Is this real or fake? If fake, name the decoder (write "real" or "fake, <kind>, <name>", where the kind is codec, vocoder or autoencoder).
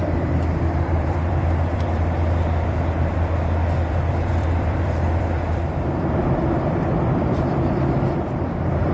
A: fake, vocoder, BigVGAN v2